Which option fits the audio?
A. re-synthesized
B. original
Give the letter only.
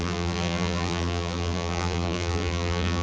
A